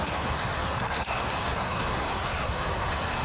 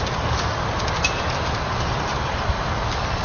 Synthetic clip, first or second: first